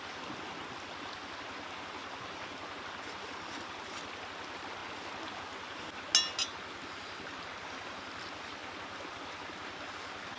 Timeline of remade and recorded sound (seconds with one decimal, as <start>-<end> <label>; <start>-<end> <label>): 0.0-10.4 recorded